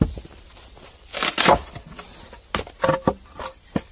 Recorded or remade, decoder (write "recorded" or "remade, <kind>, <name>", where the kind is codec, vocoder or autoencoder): recorded